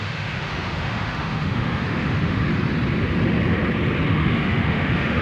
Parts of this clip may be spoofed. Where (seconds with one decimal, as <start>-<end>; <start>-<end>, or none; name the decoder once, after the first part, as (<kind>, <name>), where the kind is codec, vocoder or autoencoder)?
0.0-2.5 (autoencoder, DAC-VAE); 4.1-5.2